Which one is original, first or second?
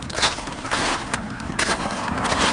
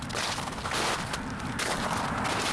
second